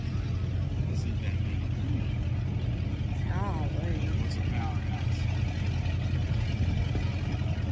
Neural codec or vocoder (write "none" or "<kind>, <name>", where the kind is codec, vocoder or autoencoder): none